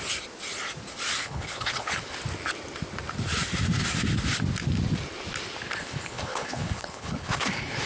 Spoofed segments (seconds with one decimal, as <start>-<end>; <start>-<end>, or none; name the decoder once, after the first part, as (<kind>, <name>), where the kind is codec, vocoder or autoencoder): 1.2-1.9 (codec, HILCodec); 5.8-7.9